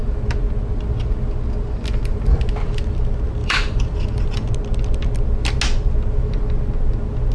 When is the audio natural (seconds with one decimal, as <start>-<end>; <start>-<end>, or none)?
0.0-3.4; 4.5-7.3